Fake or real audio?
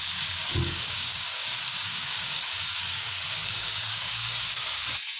fake